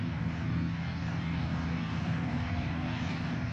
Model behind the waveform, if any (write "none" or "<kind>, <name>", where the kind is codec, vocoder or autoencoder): codec, DAC